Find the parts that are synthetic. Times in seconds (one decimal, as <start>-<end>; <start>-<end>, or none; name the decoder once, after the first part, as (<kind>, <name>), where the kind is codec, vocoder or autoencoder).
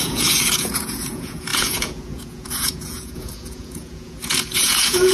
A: 0.0-5.1 (vocoder, Vocos)